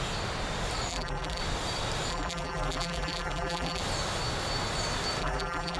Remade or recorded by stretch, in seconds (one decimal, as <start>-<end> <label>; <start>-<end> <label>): 0.0-0.9 recorded; 0.9-1.4 remade; 1.4-2.1 recorded; 2.1-3.8 remade; 3.8-5.2 recorded; 5.2-5.8 remade